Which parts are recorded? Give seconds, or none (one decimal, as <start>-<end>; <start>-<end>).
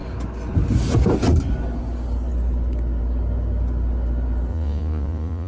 0.0-4.5